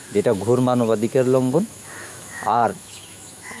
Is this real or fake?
fake